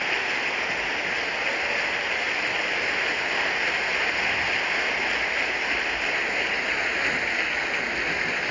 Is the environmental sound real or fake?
real